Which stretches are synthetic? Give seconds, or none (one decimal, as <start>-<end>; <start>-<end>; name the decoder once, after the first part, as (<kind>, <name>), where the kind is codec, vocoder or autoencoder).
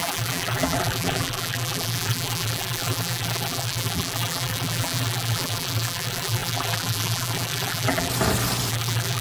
0.0-8.1 (vocoder, BigVGAN v2); 8.7-9.2